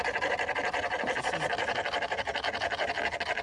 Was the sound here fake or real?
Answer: real